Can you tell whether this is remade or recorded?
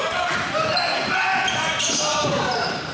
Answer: remade